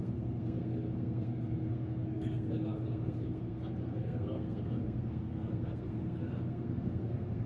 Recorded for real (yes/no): no